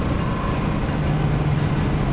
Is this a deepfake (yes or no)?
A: no